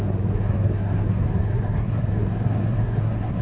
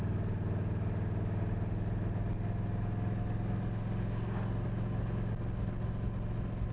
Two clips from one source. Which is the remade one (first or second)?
first